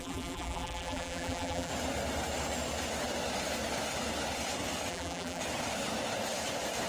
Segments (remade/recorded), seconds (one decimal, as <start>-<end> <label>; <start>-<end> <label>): 0.0-1.7 remade; 1.7-4.9 recorded; 4.9-5.4 remade; 5.4-6.9 recorded